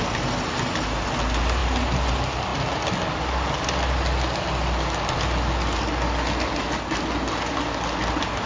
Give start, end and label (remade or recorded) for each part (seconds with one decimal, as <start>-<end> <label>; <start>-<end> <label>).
0.0-8.5 recorded